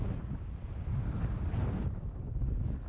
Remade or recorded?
recorded